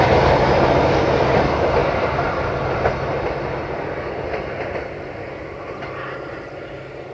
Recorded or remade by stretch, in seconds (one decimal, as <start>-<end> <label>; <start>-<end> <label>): 0.0-7.1 recorded